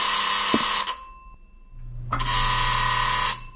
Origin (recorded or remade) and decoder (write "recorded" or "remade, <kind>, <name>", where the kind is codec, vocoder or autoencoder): recorded